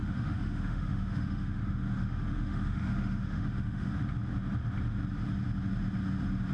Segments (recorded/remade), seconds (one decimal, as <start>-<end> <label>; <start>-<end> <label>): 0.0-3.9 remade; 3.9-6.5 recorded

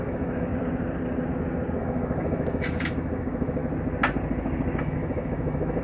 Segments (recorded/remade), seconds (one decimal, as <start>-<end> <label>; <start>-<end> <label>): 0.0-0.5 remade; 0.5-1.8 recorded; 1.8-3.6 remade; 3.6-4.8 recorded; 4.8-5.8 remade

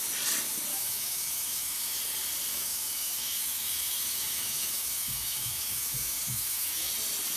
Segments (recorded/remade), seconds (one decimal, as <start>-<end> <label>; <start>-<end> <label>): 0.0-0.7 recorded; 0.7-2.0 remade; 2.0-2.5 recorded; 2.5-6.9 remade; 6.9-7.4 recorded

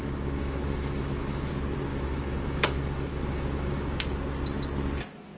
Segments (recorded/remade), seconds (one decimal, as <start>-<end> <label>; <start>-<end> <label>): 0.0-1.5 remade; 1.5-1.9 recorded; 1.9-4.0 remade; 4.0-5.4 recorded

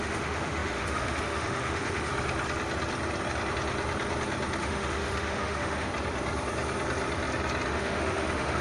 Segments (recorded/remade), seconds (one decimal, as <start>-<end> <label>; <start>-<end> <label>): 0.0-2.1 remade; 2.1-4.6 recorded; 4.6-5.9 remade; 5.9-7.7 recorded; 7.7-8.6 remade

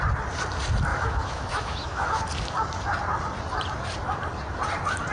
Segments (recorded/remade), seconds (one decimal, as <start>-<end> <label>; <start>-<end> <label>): 0.0-0.9 recorded; 0.9-2.2 remade; 2.2-5.1 recorded

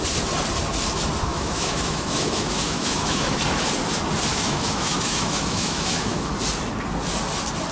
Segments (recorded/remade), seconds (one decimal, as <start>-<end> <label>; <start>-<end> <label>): 0.0-1.3 recorded; 1.3-3.4 remade; 3.4-4.3 recorded; 4.3-6.3 remade; 6.3-7.7 recorded

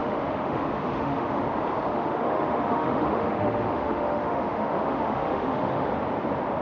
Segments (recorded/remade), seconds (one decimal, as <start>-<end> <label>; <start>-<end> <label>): 0.0-1.4 remade; 1.4-1.9 recorded; 1.9-5.9 remade; 5.9-6.6 recorded